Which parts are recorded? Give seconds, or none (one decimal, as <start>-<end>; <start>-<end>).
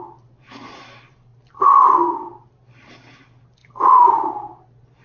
0.0-5.0